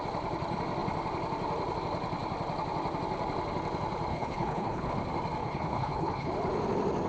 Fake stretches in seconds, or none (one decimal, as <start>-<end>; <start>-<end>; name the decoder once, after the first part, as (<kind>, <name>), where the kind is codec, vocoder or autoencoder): 4.1-4.9 (codec, HILCodec); 5.4-6.3